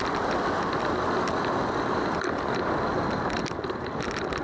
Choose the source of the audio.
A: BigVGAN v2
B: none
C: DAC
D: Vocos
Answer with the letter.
B